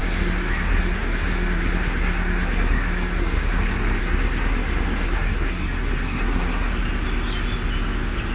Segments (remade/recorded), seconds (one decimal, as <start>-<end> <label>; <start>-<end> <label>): 0.0-3.6 remade; 3.6-4.0 recorded; 4.0-6.7 remade; 6.7-8.3 recorded